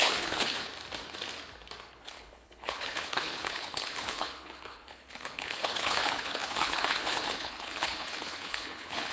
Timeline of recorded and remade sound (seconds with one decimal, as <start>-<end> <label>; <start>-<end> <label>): 0.0-0.7 remade; 0.7-1.9 recorded; 1.9-9.1 remade